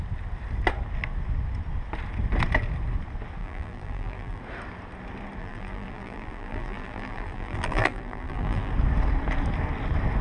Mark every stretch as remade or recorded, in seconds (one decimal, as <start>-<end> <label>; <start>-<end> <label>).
0.0-3.4 recorded; 3.4-4.4 remade; 4.4-5.4 recorded; 5.4-8.7 remade; 8.7-10.2 recorded